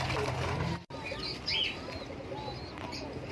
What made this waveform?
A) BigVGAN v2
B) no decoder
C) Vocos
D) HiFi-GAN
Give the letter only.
B